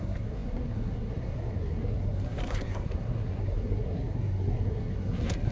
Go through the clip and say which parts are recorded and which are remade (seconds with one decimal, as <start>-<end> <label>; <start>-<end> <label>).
0.0-5.5 remade